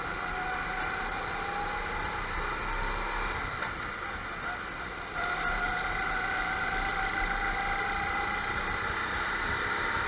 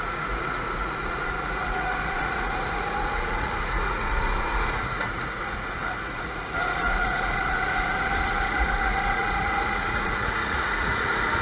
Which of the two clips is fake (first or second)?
second